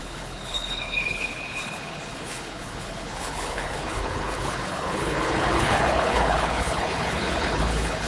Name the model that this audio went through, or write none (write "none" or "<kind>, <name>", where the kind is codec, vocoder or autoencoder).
codec, HILCodec